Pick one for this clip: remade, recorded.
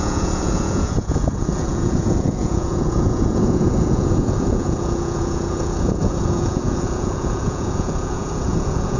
remade